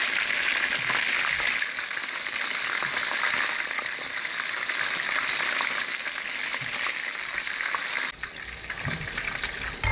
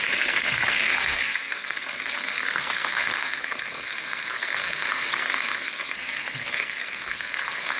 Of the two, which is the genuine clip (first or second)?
first